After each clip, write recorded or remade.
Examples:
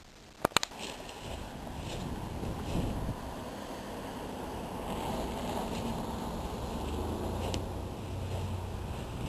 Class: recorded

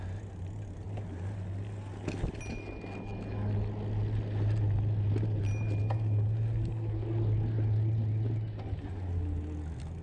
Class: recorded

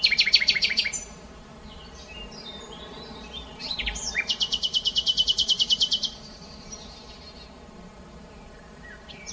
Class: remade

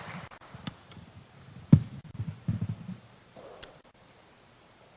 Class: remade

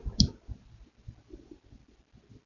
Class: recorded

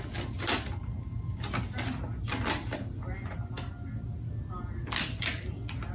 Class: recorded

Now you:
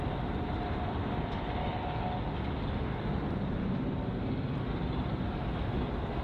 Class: recorded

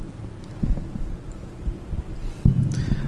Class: remade